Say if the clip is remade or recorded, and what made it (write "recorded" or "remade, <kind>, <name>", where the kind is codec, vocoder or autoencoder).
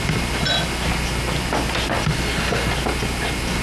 recorded